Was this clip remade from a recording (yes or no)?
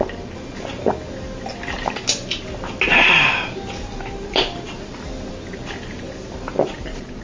no